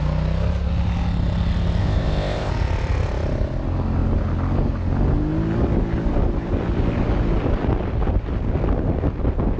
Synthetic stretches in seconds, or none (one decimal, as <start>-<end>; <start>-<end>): 1.8-2.5